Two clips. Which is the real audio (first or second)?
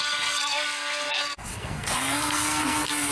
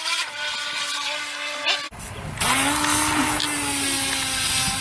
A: second